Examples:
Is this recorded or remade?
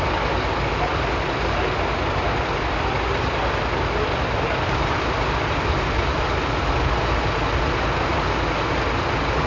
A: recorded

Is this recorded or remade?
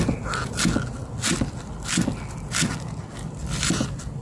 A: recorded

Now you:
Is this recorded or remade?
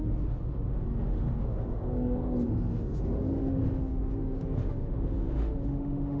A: remade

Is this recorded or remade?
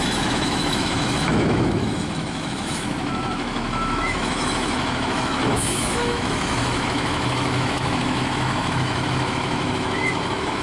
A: remade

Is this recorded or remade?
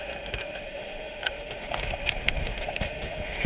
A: remade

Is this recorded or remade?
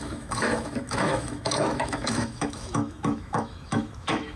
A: remade